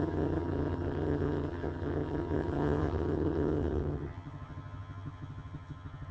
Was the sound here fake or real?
fake